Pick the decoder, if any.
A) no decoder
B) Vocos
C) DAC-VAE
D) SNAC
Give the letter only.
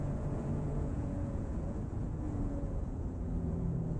B